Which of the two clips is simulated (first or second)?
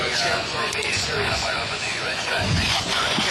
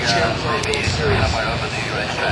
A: first